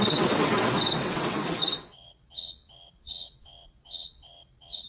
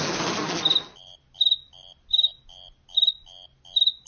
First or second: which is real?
second